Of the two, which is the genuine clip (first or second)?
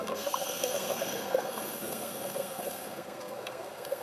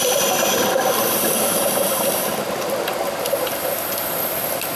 second